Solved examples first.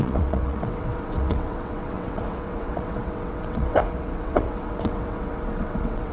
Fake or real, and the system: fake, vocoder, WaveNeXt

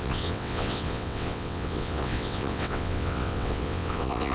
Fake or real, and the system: fake, vocoder, WaveNeXt